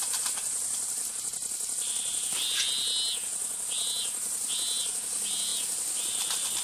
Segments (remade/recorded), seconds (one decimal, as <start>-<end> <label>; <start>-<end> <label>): 0.0-6.6 recorded